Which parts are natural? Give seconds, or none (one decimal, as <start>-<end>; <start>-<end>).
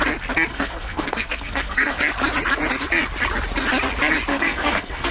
0.0-0.5; 2.0-4.3